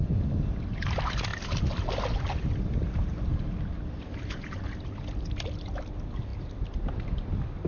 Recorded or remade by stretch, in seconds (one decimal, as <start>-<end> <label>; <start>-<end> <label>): 0.0-7.7 recorded